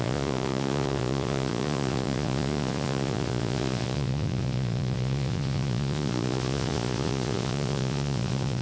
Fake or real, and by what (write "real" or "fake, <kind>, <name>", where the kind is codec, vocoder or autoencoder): fake, vocoder, Vocos